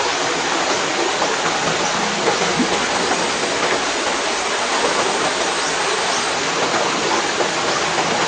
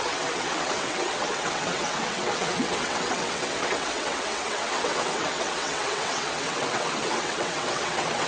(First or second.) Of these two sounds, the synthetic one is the second